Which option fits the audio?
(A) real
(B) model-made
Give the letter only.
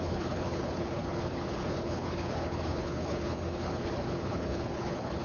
B